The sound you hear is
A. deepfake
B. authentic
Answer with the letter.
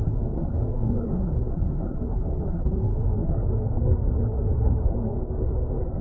A